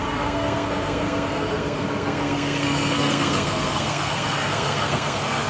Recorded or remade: remade